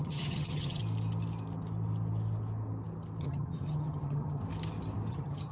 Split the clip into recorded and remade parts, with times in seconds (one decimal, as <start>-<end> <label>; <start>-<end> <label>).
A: 0.0-0.8 remade; 0.8-3.2 recorded; 3.2-4.4 remade; 4.4-5.1 recorded; 5.1-5.5 remade